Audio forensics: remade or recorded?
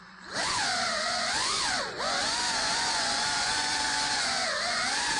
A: remade